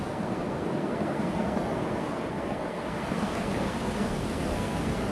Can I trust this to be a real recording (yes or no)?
no